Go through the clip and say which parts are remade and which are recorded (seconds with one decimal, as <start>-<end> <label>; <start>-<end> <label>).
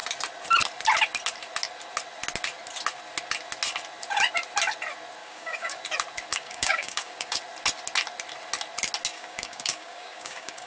0.0-5.2 recorded; 5.2-5.8 remade; 5.8-6.3 recorded; 6.3-7.4 remade; 7.4-9.1 recorded; 9.1-10.7 remade